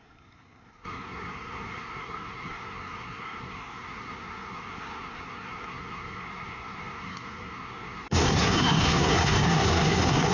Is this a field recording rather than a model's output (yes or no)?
no